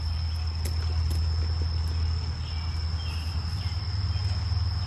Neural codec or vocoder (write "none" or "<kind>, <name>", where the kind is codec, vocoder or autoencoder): none